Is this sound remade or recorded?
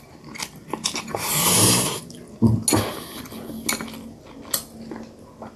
recorded